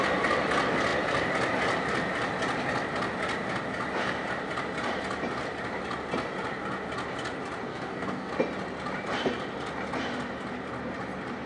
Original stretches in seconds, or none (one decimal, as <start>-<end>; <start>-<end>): 0.0-7.7; 8.3-11.5